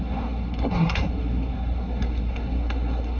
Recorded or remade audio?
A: remade